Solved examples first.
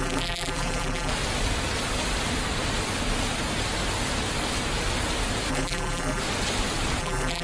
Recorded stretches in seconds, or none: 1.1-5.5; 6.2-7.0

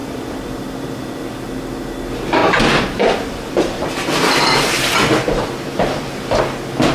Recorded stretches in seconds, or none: 1.5-2.4; 6.4-6.9

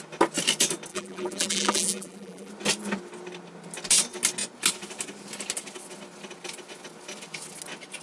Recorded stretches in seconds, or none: 0.0-0.9; 2.5-8.0

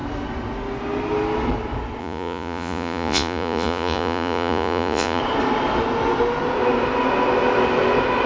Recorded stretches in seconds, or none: 0.0-2.0; 5.2-8.3

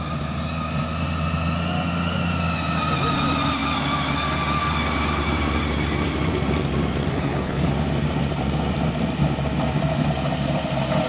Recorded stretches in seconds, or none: 0.0-7.1; 7.7-11.1

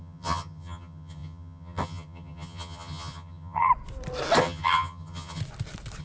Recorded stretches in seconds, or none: 3.7-4.4; 5.4-6.0

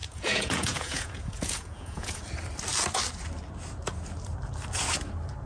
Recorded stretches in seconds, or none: 2.2-5.5